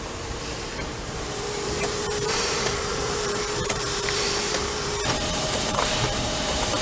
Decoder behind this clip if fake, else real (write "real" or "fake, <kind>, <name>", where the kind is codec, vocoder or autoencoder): fake, vocoder, BigVGAN v2